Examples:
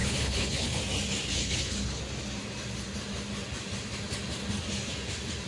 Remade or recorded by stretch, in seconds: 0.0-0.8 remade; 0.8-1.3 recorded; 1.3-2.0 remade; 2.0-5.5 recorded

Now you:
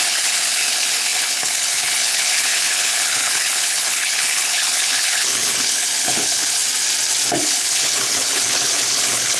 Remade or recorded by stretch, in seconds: 0.0-6.6 remade; 6.6-7.4 recorded; 7.4-9.4 remade

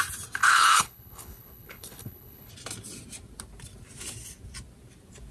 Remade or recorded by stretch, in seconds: 0.0-0.4 recorded; 0.4-2.5 remade; 2.5-5.3 recorded

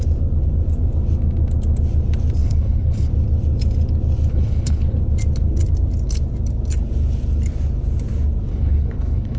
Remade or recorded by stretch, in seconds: 0.0-2.4 recorded; 2.4-3.1 remade; 3.1-4.3 recorded; 4.3-5.0 remade; 5.0-8.5 recorded; 8.5-9.4 remade

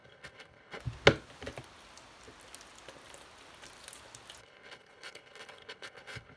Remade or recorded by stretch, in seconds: 0.0-0.8 remade; 0.8-4.4 recorded; 4.4-6.4 remade

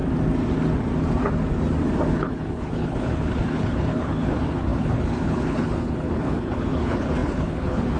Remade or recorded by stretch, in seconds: 0.0-2.1 recorded; 2.1-8.0 remade